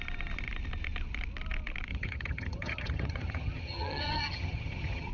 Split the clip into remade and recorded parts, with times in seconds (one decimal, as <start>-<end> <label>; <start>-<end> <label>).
0.0-1.9 recorded; 1.9-5.1 remade